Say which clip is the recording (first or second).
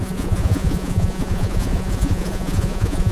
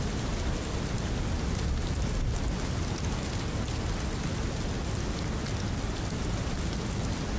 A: second